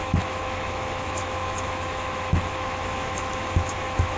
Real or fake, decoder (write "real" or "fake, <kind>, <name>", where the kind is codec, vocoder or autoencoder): fake, autoencoder, DAC-VAE